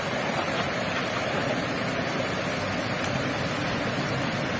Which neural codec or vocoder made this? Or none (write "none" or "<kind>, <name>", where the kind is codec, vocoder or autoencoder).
none